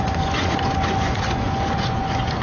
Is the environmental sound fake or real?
fake